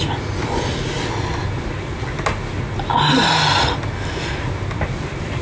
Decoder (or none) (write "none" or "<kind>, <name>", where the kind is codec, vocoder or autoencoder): none